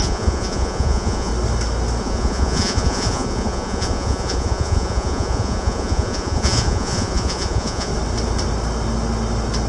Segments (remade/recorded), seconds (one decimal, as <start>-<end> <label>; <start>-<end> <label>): 0.0-1.3 remade; 1.3-2.0 recorded; 2.0-7.9 remade; 7.9-9.7 recorded